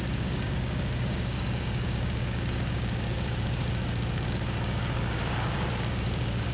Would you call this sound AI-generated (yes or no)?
yes